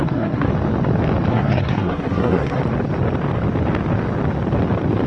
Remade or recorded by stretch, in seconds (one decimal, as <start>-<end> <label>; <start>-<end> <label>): 0.0-0.5 remade; 0.5-1.3 recorded; 1.3-2.6 remade; 2.6-5.1 recorded